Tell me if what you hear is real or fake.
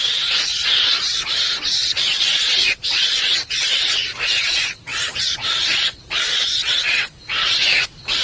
fake